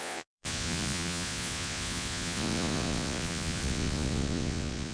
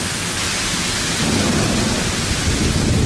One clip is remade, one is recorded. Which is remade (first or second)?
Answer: first